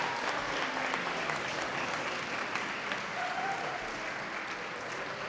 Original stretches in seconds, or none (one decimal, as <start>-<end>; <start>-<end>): 0.0-1.0; 2.2-5.3